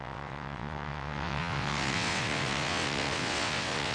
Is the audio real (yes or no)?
no